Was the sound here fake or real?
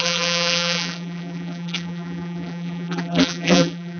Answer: fake